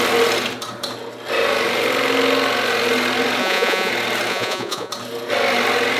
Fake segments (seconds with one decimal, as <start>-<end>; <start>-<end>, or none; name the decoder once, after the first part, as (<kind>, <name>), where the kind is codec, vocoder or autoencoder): 3.4-3.9 (vocoder, Vocos); 4.3-4.9